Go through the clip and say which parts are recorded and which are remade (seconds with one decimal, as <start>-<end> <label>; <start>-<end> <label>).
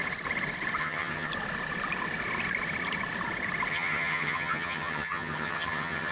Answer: 0.0-0.8 recorded; 0.8-1.3 remade; 1.3-3.7 recorded; 3.7-6.1 remade